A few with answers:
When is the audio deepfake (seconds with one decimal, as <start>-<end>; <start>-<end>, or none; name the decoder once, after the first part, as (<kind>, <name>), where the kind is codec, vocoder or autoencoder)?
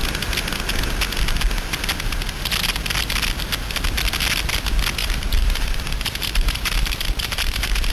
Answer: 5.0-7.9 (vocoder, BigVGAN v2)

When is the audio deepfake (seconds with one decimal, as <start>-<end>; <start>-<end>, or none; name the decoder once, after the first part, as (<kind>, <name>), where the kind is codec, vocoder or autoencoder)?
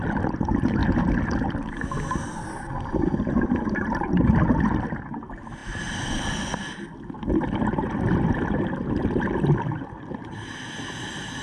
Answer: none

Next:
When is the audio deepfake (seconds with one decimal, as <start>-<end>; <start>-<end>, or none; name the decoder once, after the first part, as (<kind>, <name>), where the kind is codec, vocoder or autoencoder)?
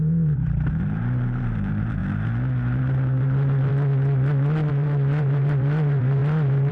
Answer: 0.0-2.0 (vocoder, BigVGAN v2); 2.8-3.7; 4.7-6.7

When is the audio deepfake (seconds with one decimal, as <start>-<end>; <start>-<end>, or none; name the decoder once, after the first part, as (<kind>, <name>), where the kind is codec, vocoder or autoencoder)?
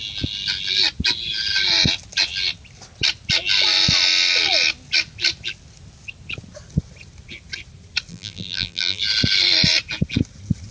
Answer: 8.1-9.0 (vocoder, BigVGAN v2)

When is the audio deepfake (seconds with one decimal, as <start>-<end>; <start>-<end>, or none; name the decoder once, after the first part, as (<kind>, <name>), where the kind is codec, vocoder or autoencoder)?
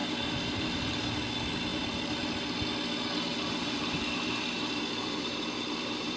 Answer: 0.0-0.9 (vocoder, BigVGAN v2); 1.7-2.3; 3.3-6.2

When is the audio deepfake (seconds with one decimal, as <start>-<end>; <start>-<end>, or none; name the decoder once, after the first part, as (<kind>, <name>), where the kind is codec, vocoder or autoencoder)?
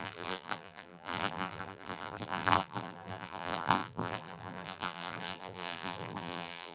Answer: 0.0-6.7 (vocoder, BigVGAN v2)